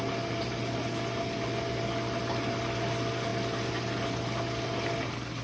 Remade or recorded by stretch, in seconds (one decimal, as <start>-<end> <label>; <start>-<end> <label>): 0.0-5.4 recorded